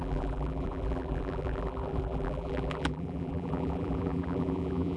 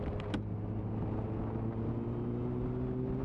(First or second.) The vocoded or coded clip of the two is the first